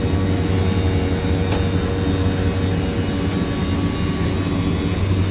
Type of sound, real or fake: real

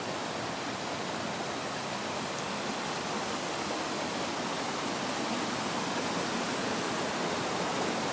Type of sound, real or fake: real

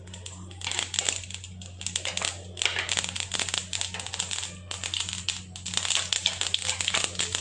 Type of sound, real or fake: real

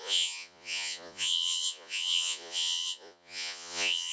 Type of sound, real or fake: fake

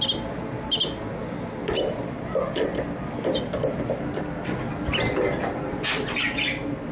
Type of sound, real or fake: real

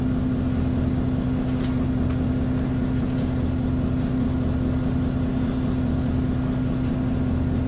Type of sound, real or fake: real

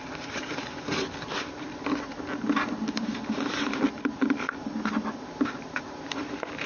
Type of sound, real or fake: real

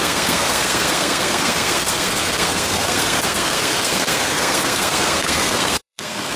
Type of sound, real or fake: fake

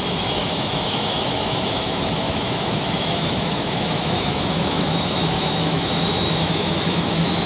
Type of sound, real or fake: fake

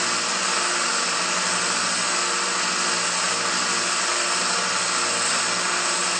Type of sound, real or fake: real